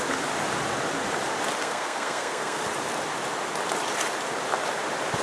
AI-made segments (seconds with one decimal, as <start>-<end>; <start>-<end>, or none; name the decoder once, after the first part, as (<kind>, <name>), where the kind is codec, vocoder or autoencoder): 1.6-2.6 (codec, SNAC)